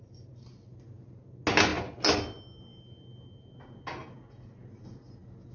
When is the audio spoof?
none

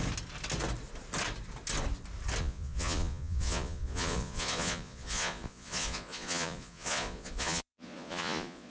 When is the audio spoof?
2.4-8.7 (vocoder, Vocos)

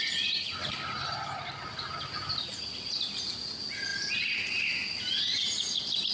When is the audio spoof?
none